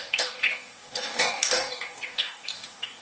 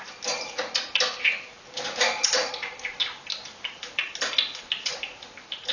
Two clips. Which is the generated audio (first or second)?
first